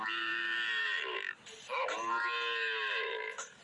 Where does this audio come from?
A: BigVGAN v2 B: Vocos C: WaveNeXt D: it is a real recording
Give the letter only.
A